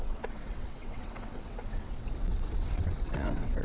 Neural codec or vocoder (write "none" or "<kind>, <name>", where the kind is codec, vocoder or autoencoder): vocoder, WaveNeXt